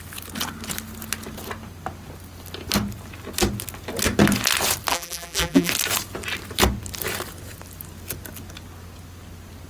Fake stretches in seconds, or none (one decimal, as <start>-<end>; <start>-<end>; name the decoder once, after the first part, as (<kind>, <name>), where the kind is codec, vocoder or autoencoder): 4.9-5.7 (vocoder, BigVGAN v2)